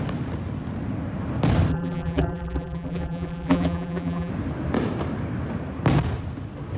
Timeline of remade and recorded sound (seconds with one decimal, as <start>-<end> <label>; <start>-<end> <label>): 0.0-1.7 recorded; 1.7-4.3 remade; 4.3-6.8 recorded